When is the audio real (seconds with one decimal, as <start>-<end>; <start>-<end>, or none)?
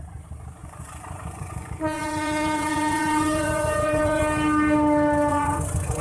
0.0-0.6; 4.2-5.3